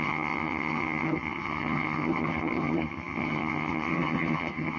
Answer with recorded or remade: remade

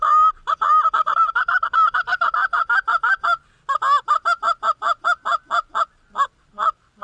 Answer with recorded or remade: recorded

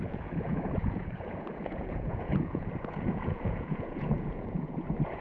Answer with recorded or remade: remade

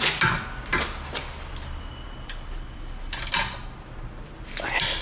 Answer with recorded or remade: recorded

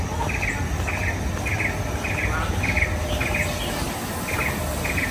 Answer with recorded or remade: recorded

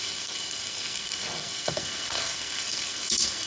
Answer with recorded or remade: remade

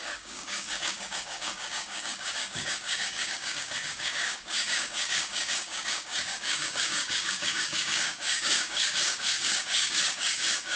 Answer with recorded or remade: remade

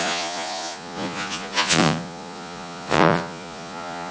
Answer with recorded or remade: remade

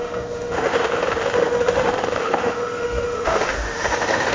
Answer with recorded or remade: remade